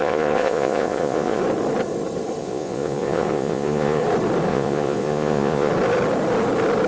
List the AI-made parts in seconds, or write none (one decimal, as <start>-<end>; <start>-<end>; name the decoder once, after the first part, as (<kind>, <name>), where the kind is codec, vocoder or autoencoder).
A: 0.0-1.4 (vocoder, Vocos); 2.4-4.0; 4.5-5.7